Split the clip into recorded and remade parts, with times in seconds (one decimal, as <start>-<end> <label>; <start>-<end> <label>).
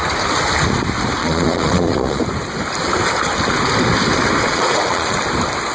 0.0-1.2 recorded; 1.2-2.2 remade; 2.2-4.5 recorded; 4.5-5.2 remade; 5.2-5.7 recorded